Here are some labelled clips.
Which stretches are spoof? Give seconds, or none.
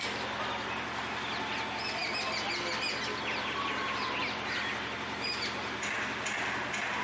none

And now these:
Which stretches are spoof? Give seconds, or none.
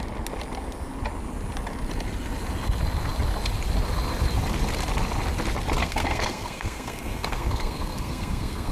5.8-8.7 (codec, SNAC)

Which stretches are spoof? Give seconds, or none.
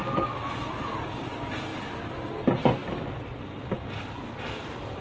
none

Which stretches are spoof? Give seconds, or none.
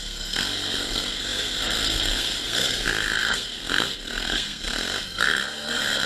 0.0-6.1 (codec, SNAC)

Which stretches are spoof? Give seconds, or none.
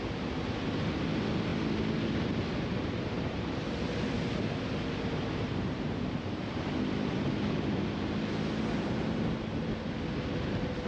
none